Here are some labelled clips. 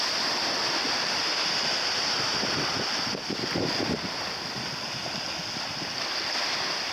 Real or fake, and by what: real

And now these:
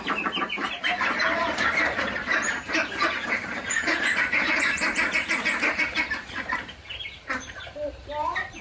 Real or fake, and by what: fake, vocoder, BigVGAN v2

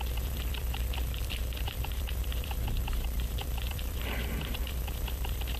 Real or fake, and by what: fake, vocoder, BigVGAN v2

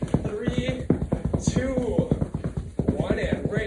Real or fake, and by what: real